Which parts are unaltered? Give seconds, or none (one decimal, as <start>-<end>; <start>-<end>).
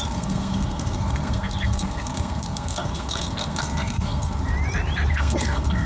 4.5-5.1